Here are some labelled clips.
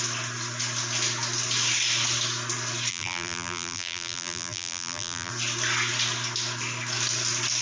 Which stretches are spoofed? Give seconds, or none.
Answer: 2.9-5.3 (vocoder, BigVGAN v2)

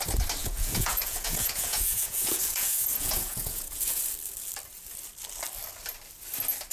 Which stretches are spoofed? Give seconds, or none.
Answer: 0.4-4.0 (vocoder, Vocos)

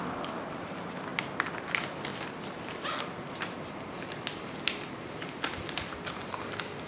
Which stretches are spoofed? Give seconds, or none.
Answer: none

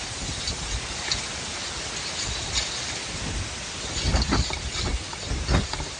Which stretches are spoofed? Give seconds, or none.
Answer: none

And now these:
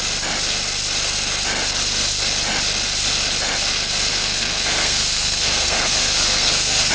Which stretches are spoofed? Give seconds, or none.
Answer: 4.1-6.9 (codec, SNAC)